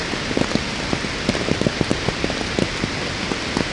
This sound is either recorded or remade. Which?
recorded